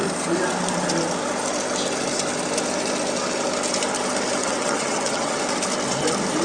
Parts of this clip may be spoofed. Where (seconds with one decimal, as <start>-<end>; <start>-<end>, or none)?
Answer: 4.4-5.4